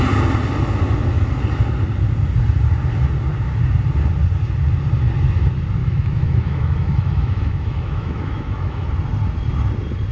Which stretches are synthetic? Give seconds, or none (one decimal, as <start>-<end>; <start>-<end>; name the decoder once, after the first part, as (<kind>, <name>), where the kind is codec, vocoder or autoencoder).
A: 5.8-8.9 (autoencoder, DAC-VAE)